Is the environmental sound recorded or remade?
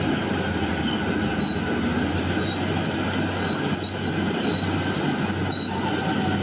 recorded